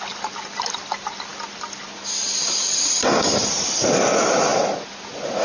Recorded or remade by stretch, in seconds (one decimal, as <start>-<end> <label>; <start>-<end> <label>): 0.0-5.4 remade